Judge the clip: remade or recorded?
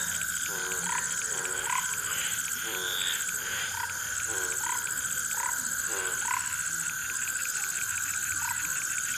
recorded